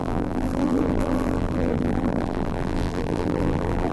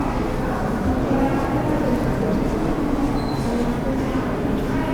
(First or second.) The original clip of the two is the second